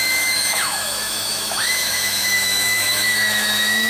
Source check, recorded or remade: remade